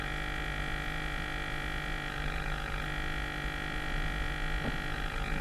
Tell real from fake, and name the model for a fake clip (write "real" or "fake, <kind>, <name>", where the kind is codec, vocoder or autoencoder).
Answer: fake, vocoder, Vocos